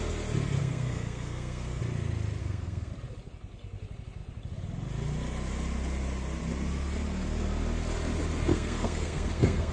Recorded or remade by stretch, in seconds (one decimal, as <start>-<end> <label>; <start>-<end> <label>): 0.0-0.6 recorded; 0.6-1.8 remade; 1.8-2.4 recorded; 2.4-2.9 remade; 2.9-8.5 recorded; 8.5-9.7 remade